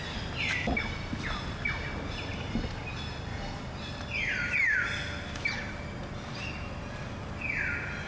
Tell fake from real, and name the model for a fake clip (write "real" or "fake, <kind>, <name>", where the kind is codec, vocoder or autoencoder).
real